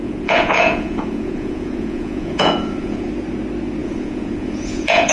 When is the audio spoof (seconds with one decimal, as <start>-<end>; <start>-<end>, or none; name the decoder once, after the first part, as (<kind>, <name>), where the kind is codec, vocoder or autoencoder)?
0.0-3.1 (vocoder, Vocos); 3.8-5.1